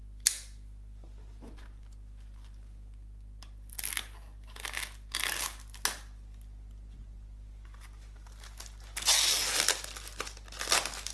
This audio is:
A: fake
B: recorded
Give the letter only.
B